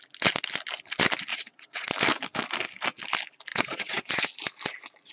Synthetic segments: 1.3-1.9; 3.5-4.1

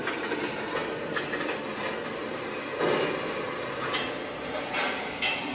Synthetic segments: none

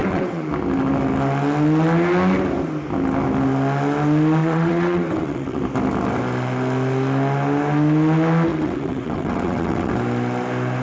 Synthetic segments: 0.0-0.5; 4.4-5.6; 8.5-9.9

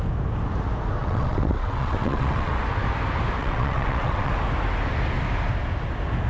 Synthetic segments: 1.0-2.5; 3.4-4.3

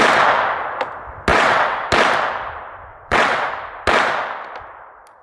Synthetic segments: 1.3-1.9; 2.9-3.5

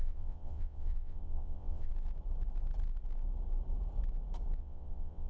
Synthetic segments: 0.0-1.9; 4.6-5.3

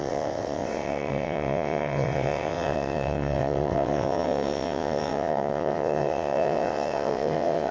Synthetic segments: 0.0-7.7